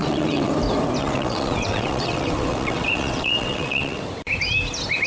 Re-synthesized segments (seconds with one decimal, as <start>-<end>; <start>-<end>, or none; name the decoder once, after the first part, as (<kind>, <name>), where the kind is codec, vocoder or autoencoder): 0.0-0.5 (vocoder, WaveNeXt); 1.0-4.0